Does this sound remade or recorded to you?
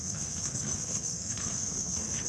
remade